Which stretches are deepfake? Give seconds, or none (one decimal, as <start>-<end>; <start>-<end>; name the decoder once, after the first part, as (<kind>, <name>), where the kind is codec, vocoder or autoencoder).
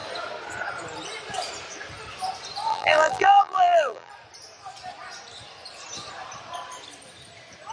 2.7-4.1 (vocoder, BigVGAN v2)